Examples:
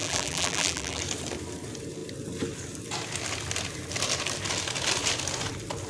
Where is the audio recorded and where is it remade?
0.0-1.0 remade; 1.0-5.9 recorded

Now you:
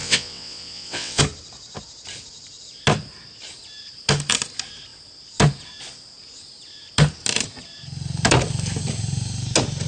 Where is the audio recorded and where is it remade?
0.0-1.2 remade; 1.2-9.9 recorded

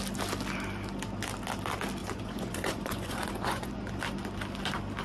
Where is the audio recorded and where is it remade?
0.0-2.0 recorded; 2.0-3.9 remade; 3.9-5.0 recorded